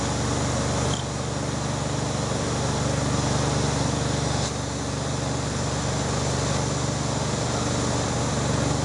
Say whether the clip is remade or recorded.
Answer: recorded